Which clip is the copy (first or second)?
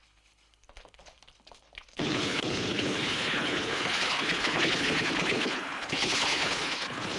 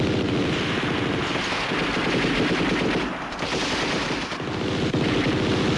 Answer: first